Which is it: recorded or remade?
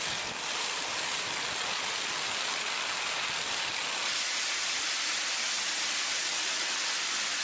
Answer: recorded